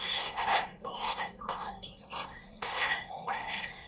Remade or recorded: remade